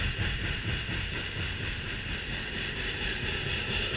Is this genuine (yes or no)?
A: no